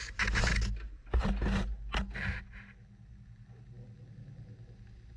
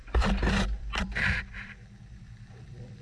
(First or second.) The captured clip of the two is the first